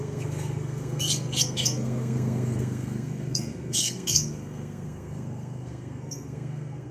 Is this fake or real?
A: fake